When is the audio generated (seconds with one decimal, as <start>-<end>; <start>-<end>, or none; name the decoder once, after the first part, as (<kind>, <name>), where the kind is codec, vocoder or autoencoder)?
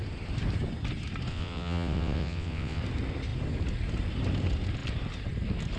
1.3-2.8 (vocoder, WaveNeXt)